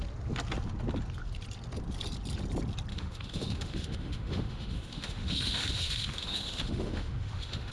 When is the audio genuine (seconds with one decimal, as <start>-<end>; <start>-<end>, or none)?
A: 0.0-2.9